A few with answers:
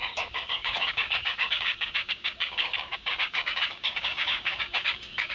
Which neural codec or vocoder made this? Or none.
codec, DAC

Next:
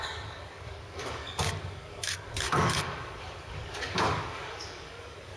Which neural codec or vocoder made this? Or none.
codec, DAC